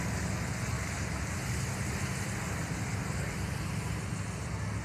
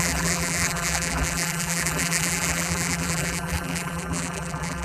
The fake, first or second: second